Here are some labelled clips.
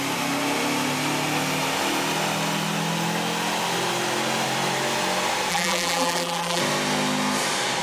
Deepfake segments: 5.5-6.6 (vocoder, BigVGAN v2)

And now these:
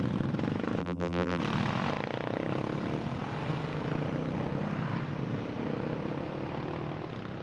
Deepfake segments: 0.8-1.4 (vocoder, BigVGAN v2)

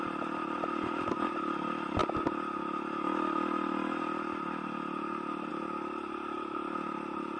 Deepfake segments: 0.0-2.0 (vocoder, BigVGAN v2); 5.5-7.4